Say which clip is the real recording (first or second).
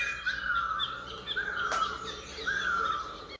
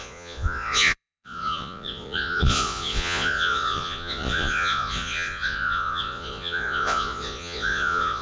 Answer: first